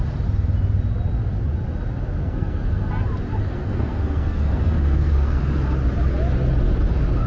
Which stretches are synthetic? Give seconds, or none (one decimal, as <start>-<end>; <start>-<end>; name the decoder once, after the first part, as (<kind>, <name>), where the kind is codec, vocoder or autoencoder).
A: 2.2-2.9 (codec, SNAC); 3.4-5.4